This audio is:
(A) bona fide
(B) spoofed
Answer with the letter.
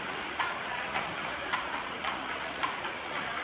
B